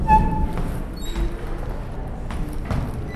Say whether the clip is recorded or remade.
recorded